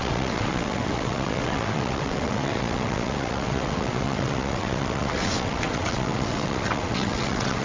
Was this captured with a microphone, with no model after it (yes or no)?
no